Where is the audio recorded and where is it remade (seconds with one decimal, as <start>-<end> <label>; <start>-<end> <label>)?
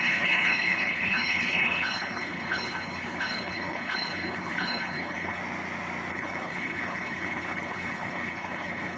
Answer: 0.0-5.4 remade; 5.4-6.1 recorded; 6.1-9.0 remade